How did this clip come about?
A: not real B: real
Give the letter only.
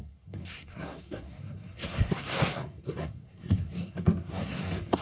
A